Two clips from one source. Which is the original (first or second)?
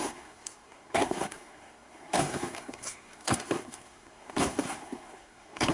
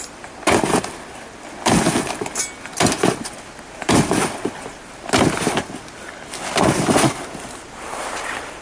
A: second